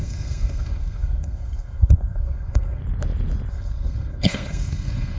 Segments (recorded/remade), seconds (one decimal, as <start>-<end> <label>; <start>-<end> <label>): 0.0-2.8 remade; 2.8-3.5 recorded; 3.5-5.2 remade